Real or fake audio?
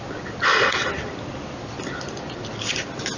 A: real